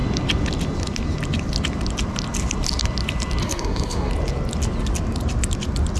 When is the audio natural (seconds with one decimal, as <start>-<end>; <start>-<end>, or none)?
0.0-3.4; 4.1-6.0